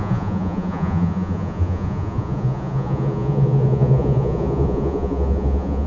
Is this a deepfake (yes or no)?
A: yes